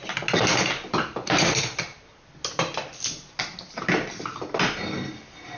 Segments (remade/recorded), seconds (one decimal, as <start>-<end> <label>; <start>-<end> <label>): 0.0-5.6 recorded